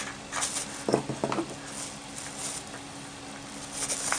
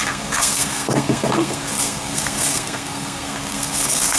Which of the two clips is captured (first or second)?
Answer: first